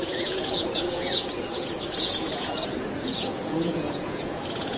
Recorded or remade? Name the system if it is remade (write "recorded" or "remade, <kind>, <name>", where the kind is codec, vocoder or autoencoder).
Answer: remade, vocoder, Vocos